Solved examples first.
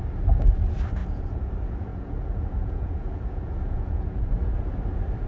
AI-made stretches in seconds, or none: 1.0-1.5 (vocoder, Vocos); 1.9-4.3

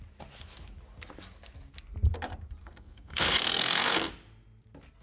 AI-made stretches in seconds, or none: 2.6-4.1 (codec, SNAC)

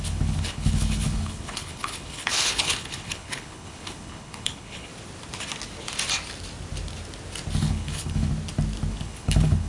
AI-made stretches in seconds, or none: 0.0-4.9 (codec, HILCodec); 7.6-8.3; 8.9-9.7

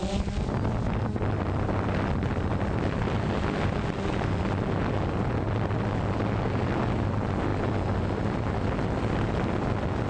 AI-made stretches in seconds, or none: none